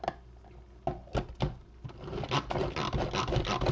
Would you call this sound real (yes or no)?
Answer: yes